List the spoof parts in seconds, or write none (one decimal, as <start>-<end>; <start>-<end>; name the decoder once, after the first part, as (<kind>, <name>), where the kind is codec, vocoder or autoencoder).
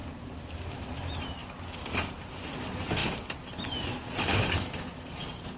none